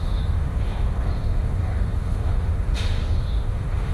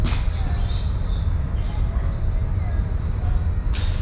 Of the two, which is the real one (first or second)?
second